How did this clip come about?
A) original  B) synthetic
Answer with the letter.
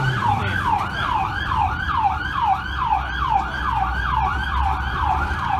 B